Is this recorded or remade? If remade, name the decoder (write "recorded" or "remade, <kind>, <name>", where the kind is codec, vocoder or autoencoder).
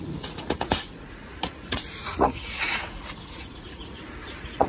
remade, vocoder, Vocos